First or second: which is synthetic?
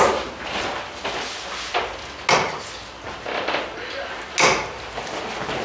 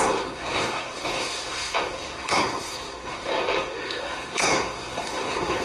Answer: second